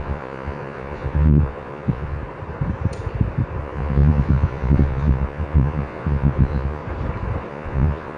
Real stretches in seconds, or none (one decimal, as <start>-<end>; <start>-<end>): 2.2-3.6; 6.8-7.5